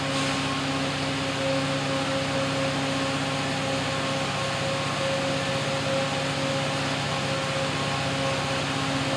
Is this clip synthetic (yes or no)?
no